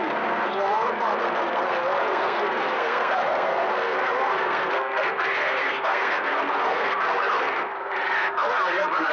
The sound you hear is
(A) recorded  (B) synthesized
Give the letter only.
B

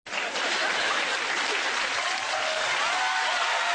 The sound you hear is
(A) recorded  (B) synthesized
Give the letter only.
A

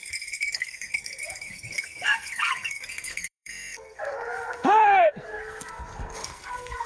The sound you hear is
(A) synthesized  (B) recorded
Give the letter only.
A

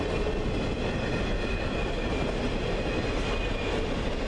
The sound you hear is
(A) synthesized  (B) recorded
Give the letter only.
B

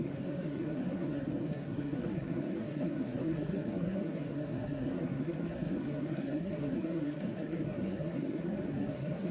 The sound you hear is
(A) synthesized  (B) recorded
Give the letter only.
A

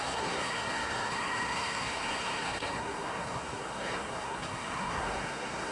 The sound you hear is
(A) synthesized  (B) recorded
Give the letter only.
A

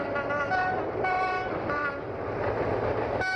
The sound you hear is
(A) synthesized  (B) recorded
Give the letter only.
B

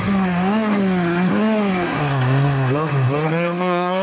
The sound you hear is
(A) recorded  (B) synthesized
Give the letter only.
B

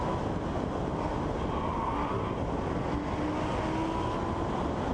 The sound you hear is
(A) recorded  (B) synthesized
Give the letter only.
A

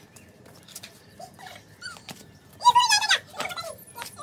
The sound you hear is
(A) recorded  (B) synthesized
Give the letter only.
A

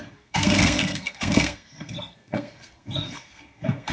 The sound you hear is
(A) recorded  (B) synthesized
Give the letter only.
B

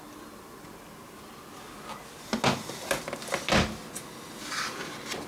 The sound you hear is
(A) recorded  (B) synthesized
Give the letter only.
A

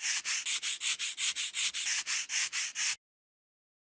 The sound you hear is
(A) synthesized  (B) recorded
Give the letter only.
B